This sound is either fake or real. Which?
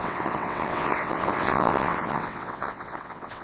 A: fake